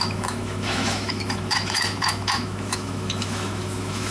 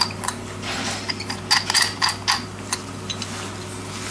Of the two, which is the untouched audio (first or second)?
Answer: second